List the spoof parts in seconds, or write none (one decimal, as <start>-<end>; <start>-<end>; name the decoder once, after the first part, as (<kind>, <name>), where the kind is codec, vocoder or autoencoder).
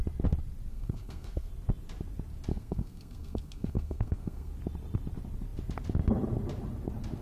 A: 0.7-1.5 (codec, SNAC); 2.5-4.5